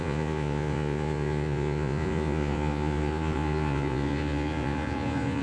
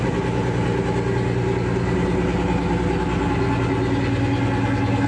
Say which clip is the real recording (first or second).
second